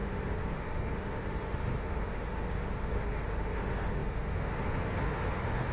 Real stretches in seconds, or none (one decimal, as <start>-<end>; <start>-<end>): none